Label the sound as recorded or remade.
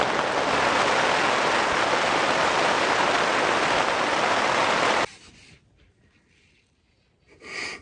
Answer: recorded